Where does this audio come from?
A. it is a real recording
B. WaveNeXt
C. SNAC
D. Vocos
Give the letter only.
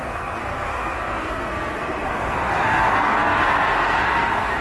C